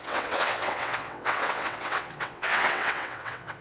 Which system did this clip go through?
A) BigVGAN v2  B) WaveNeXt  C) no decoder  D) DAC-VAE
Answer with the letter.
B